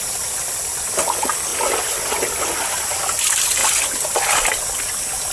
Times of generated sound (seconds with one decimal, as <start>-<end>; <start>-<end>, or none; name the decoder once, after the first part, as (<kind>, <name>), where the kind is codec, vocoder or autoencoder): none